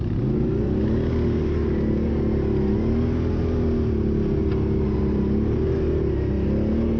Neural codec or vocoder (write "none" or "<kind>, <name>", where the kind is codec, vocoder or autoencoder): none